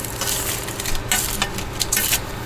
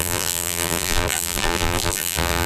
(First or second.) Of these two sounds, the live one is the first